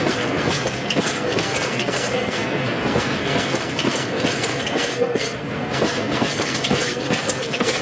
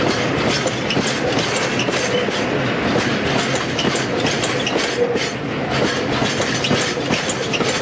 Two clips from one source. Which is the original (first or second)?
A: second